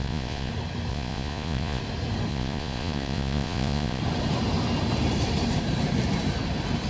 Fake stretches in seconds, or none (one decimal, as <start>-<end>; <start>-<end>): 0.0-0.5; 0.9-1.8; 2.3-4.0